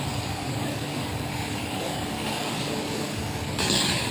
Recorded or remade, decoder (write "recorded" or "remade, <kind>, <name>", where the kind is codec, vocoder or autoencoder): remade, codec, DAC